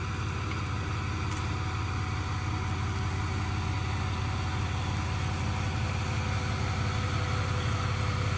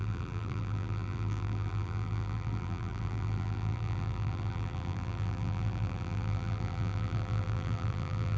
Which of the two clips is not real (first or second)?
second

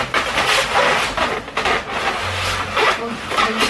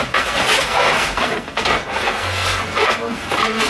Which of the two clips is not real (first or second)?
second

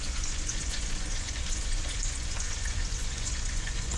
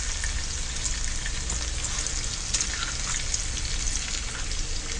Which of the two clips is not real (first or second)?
first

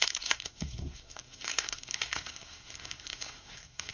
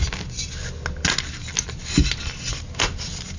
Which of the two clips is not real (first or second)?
first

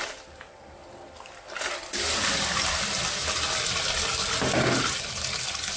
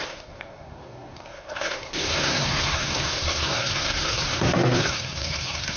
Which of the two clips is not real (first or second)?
second